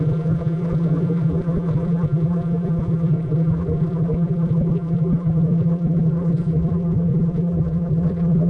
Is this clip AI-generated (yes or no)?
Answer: yes